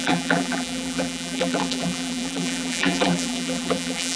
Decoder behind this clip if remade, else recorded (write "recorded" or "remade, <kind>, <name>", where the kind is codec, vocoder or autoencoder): remade, vocoder, BigVGAN v2